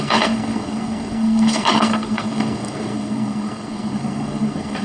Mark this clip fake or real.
fake